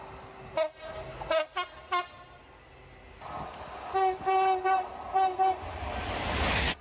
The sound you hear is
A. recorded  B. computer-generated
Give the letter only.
A